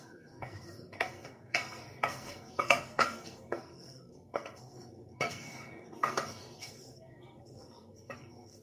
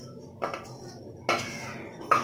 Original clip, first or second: second